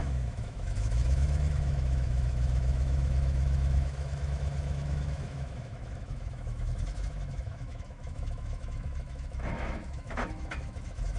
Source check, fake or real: fake